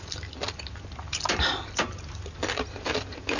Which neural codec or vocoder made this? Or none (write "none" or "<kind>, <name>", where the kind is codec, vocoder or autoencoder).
none